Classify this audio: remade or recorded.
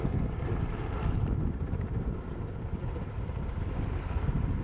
remade